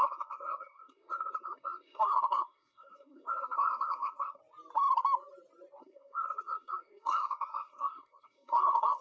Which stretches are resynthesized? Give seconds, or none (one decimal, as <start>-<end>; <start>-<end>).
0.0-4.4; 5.8-9.0